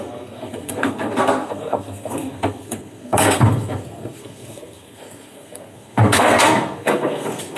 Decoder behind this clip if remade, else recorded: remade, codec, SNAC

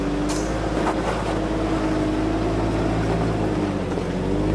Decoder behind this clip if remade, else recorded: recorded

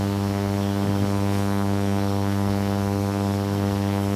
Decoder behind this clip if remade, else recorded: remade, codec, SNAC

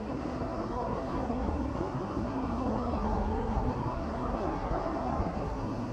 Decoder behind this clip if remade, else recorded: remade, codec, SNAC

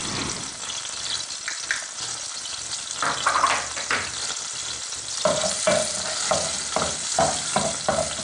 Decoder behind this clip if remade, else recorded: recorded